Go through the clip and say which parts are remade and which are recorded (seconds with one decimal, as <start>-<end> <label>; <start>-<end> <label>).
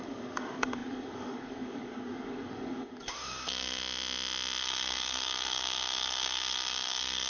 0.0-3.8 remade; 3.8-4.6 recorded; 4.6-7.3 remade